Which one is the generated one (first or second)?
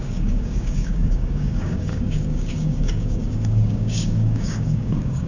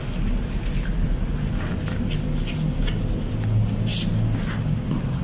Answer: first